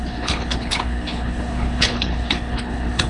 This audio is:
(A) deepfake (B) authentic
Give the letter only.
A